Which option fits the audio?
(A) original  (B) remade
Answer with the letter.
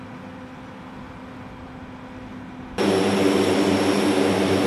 A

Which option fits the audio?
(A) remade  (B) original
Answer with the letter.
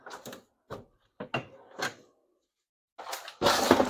B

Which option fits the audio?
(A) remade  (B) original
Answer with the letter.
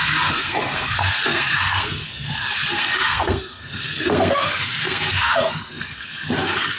A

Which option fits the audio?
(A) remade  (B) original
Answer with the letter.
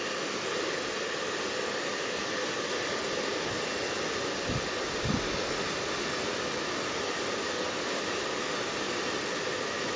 B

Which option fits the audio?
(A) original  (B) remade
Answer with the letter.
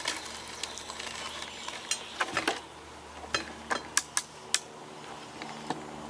A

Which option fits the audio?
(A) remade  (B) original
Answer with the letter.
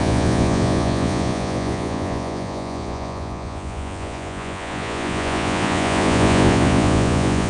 A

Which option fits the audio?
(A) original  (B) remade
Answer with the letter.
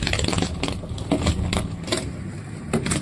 A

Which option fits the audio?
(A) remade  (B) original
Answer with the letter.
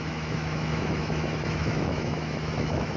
A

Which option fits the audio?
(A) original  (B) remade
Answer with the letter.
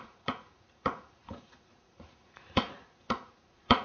B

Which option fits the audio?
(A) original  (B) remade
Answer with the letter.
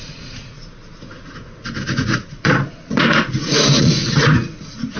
B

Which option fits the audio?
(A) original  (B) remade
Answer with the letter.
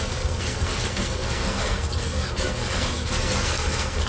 B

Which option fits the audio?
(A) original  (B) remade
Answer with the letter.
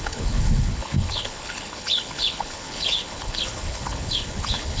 B